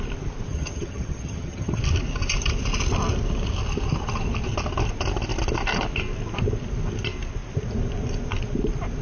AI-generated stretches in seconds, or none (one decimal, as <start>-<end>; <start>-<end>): 0.5-1.8